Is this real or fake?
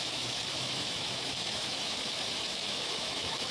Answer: fake